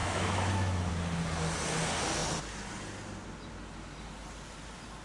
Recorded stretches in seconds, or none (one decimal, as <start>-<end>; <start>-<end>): 0.9-5.0